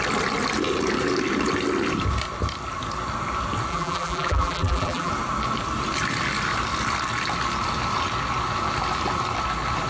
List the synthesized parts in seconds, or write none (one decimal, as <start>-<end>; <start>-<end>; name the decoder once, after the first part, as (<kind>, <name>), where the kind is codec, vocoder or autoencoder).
3.7-5.1 (vocoder, BigVGAN v2)